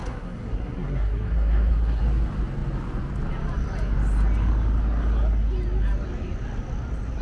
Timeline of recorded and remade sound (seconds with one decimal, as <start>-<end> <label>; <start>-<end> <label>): 0.0-2.0 remade; 2.0-7.2 recorded